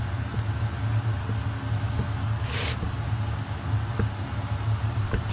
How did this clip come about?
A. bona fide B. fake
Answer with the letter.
A